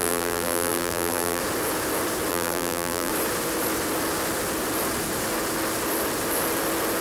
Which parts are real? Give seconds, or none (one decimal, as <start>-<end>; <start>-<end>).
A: 1.4-2.3; 3.1-7.0